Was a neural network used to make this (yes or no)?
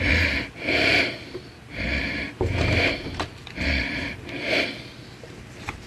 no